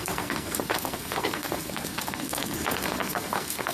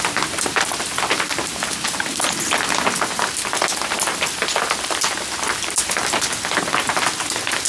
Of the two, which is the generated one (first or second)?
first